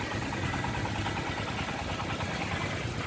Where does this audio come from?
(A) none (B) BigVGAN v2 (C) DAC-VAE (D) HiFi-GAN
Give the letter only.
A